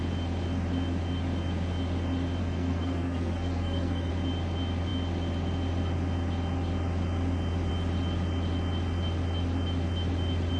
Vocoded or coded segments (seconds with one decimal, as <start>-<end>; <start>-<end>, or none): 2.4-4.1